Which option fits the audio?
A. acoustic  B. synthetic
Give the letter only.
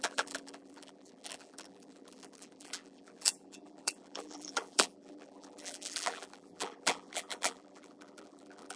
B